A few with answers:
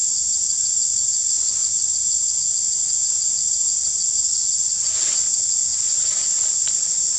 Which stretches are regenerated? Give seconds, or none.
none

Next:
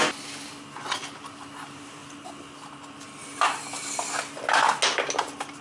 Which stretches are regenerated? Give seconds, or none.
none